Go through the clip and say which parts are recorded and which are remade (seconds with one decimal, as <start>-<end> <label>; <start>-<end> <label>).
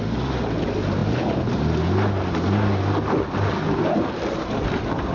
0.0-5.1 recorded